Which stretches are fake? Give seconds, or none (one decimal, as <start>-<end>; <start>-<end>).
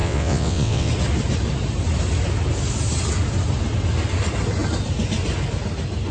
0.0-0.9